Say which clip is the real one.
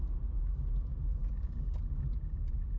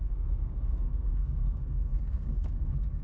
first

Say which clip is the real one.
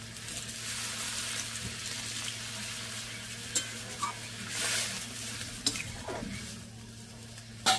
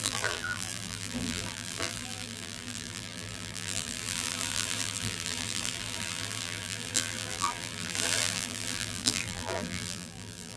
first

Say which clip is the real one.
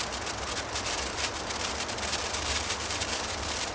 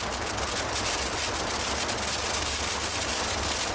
second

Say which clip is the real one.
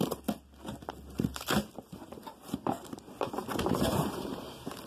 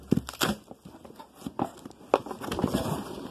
second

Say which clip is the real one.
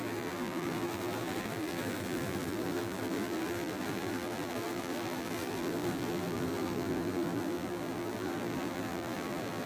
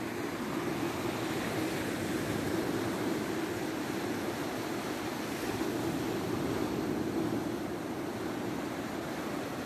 second